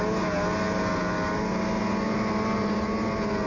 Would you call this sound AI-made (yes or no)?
no